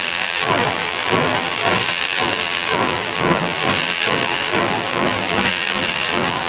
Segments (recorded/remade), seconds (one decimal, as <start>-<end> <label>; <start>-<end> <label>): 0.0-6.5 remade